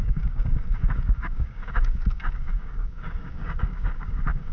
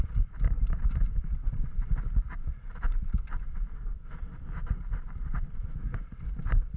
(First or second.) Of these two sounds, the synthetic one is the first